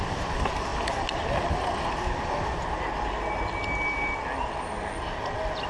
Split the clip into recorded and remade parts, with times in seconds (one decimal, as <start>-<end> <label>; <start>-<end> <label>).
0.0-5.7 recorded